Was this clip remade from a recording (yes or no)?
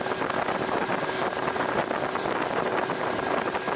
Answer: no